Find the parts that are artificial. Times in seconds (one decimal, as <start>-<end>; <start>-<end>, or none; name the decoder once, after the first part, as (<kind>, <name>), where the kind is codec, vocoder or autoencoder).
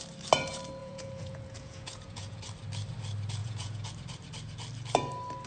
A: 0.8-2.4 (vocoder, Vocos); 3.4-3.9